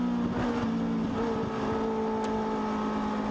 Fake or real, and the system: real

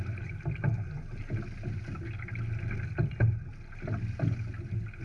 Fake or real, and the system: real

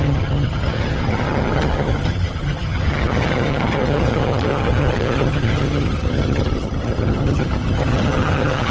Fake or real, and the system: fake, vocoder, HiFi-GAN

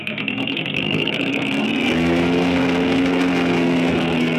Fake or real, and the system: fake, codec, SNAC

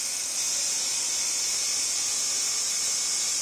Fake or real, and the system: real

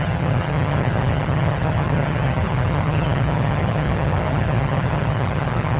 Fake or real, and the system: fake, vocoder, HiFi-GAN